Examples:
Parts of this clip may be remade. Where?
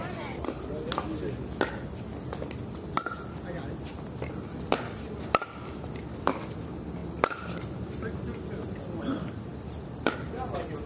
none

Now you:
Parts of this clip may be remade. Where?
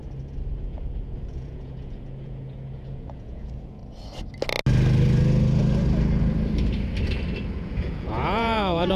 0.6-3.8 (vocoder, Vocos); 7.5-9.0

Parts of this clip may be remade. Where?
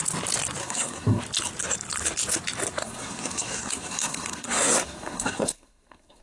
0.6-1.2 (codec, SNAC); 2.8-6.2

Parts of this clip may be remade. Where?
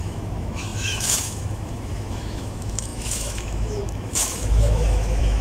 0.0-5.4 (autoencoder, DAC-VAE)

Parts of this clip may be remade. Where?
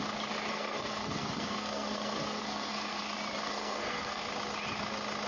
0.5-3.0 (codec, SNAC); 3.4-4.2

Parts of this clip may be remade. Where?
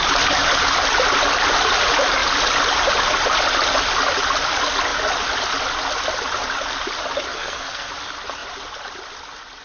7.3-7.9 (codec, SNAC)